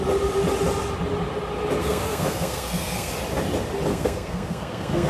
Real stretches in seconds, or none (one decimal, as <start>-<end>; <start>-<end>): 0.0-1.8; 3.1-3.9